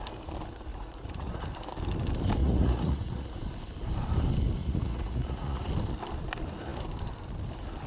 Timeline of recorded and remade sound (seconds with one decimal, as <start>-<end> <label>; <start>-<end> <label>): 0.0-0.7 recorded; 0.7-1.5 remade; 1.5-2.4 recorded; 2.4-3.4 remade; 3.4-4.6 recorded; 4.6-5.7 remade; 5.7-7.9 recorded